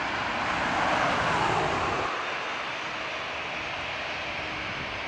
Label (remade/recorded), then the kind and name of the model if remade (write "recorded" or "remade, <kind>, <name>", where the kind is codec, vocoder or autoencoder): recorded